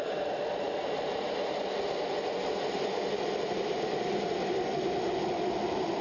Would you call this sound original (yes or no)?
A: yes